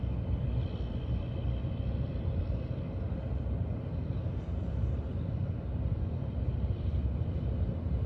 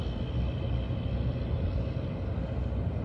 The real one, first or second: second